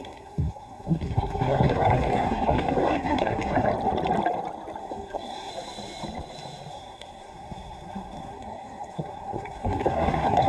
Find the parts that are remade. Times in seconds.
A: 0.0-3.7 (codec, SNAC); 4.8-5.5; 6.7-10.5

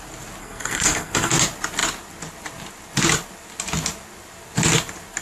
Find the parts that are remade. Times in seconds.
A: 0.4-1.3 (codec, SNAC)

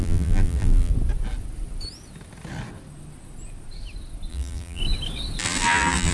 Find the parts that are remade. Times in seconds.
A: 0.0-0.9 (vocoder, BigVGAN v2); 4.3-4.8; 5.4-6.1